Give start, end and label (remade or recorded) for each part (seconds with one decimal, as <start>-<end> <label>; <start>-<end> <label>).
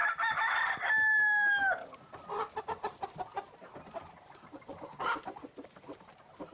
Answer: 0.0-2.6 recorded; 2.6-6.5 remade